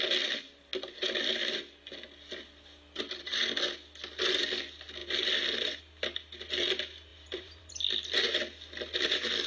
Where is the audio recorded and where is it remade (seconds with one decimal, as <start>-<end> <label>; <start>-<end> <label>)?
0.0-7.1 recorded; 7.1-7.7 remade; 7.7-9.5 recorded